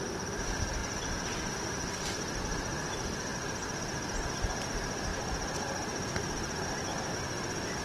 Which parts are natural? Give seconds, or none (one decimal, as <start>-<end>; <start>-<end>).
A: 0.0-0.8; 2.4-7.8